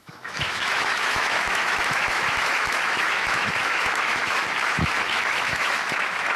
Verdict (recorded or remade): remade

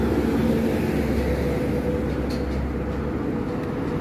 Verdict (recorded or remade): recorded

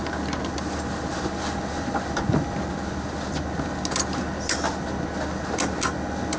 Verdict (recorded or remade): recorded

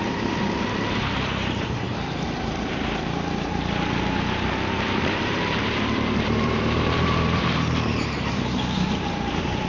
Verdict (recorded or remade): remade